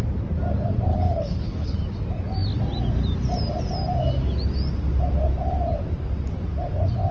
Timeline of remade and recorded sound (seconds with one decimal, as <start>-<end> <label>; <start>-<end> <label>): 0.0-0.9 recorded; 0.9-1.8 remade; 1.8-7.1 recorded